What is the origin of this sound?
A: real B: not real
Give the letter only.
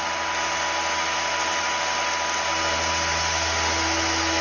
A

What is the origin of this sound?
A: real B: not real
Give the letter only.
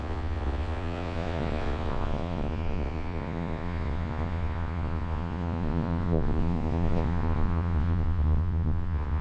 B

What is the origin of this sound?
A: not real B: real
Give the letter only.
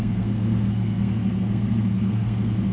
A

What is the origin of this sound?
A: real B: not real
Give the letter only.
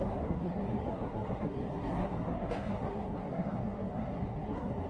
B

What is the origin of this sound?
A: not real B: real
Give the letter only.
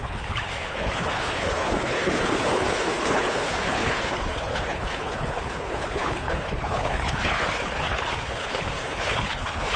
A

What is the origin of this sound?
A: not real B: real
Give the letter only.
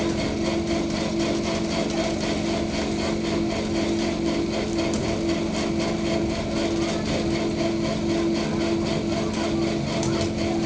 B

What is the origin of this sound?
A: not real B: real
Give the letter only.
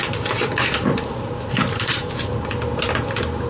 A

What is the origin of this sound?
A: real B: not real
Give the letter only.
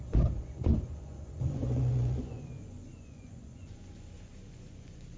B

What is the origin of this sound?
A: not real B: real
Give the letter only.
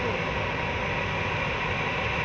B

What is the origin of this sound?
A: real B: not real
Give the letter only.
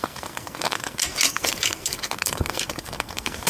B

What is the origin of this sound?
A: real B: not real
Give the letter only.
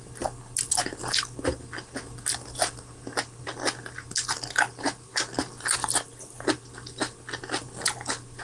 A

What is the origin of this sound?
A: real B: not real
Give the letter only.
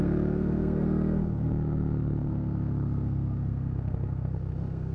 B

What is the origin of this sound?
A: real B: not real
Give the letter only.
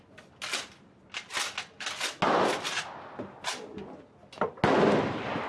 A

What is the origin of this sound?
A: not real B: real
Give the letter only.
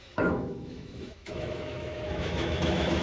A